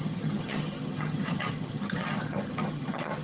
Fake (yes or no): yes